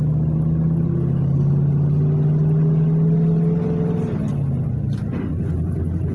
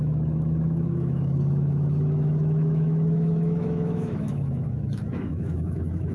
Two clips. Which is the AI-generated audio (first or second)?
second